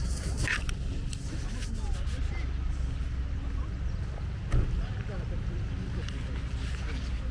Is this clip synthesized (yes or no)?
no